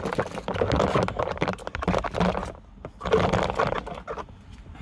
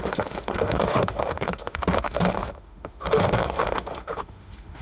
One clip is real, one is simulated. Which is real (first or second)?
first